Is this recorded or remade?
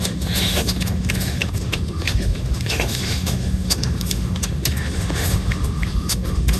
remade